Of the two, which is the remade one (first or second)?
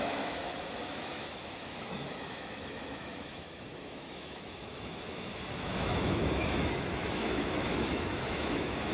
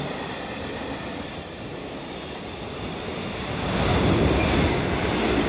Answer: first